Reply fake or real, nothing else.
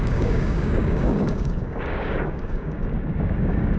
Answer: fake